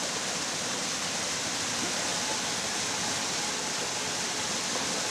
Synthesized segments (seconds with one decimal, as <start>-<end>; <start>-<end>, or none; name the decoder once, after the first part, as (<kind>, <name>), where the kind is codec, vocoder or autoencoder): 0.0-2.1 (vocoder, BigVGAN v2); 3.7-5.1